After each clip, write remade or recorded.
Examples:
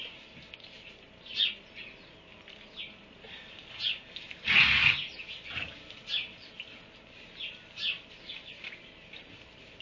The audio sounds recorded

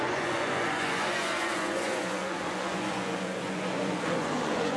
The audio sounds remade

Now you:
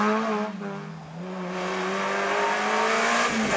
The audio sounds recorded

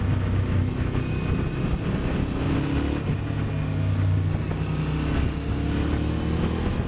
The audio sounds recorded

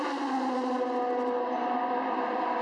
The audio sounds recorded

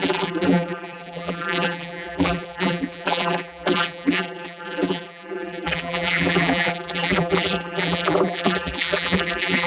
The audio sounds remade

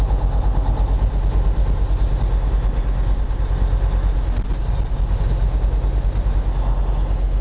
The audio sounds recorded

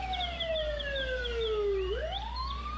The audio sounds recorded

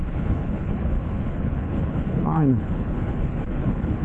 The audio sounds remade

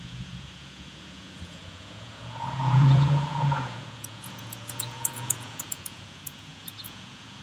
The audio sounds remade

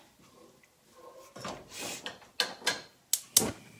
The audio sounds recorded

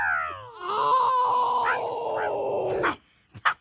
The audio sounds recorded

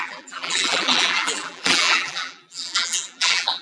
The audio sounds remade